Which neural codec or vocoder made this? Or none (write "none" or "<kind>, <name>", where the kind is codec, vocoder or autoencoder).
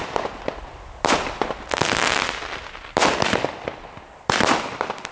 none